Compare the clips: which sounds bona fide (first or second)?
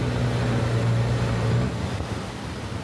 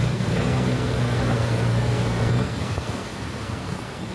first